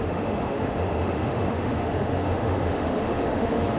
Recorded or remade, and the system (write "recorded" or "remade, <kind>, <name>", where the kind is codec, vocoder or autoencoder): remade, autoencoder, DAC-VAE